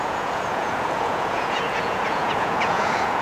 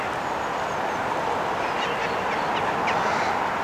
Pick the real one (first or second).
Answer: second